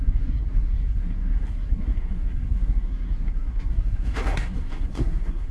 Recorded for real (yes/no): no